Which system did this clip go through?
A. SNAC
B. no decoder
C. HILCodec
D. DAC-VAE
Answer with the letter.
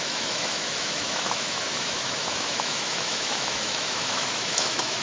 D